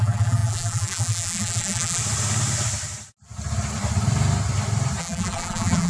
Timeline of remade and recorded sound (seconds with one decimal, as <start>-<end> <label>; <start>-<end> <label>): 0.0-2.0 remade; 2.0-5.0 recorded; 5.0-5.9 remade